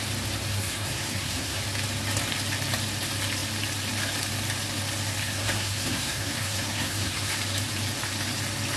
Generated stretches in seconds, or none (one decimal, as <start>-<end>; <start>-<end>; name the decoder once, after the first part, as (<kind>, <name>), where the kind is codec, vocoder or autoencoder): 0.5-1.6 (codec, SNAC); 5.2-7.3